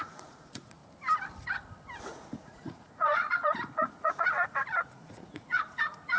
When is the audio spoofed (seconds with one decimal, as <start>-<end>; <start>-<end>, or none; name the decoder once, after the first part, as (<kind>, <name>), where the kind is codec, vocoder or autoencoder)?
0.0-0.8 (vocoder, Vocos); 2.0-6.2

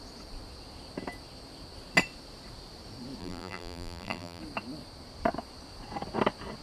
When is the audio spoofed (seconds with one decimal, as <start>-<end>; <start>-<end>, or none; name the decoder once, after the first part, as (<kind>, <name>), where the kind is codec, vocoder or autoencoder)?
3.2-4.4 (vocoder, BigVGAN v2)

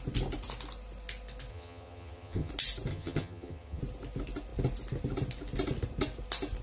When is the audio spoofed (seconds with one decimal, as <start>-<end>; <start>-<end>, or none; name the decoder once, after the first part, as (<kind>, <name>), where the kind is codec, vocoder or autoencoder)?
1.5-2.5 (vocoder, HiFi-GAN); 2.9-3.8

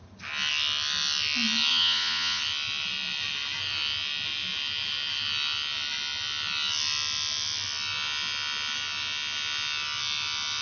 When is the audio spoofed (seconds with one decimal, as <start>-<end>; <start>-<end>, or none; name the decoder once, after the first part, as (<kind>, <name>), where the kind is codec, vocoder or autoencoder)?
1.7-2.4 (vocoder, Vocos)

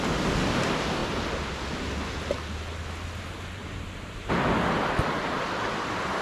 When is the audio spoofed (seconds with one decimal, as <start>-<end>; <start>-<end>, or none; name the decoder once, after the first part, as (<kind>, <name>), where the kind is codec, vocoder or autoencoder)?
1.0-1.5 (vocoder, BigVGAN v2); 3.6-4.3